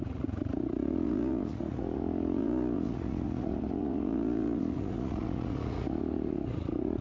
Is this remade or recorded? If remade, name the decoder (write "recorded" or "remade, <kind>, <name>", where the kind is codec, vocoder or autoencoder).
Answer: remade, vocoder, Vocos